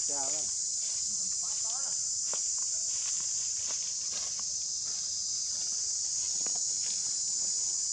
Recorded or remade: recorded